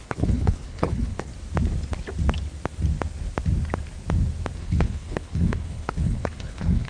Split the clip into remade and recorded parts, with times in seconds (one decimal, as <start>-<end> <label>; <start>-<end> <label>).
0.0-1.3 remade; 1.3-4.6 recorded; 4.6-6.9 remade